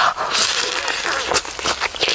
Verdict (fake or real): real